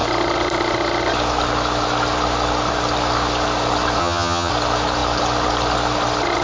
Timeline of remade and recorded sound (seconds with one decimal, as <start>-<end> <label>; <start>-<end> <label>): 0.0-4.0 recorded; 4.0-4.5 remade; 4.5-6.4 recorded